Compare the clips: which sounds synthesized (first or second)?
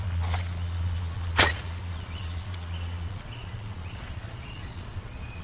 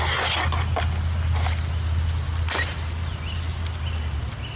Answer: first